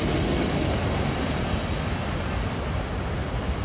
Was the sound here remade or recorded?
recorded